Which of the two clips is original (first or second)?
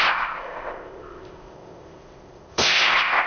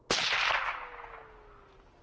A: second